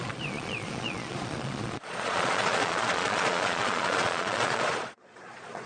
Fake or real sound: fake